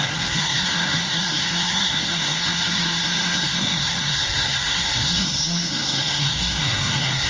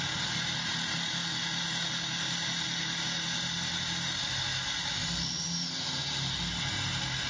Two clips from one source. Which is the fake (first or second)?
first